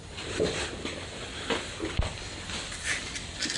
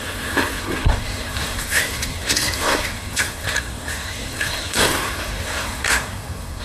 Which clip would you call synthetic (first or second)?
second